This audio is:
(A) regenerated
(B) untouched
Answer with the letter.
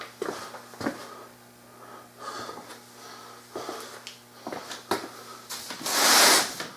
B